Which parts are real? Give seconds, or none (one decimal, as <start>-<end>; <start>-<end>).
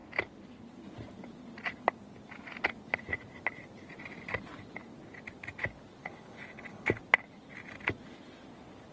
0.0-6.0; 7.0-8.9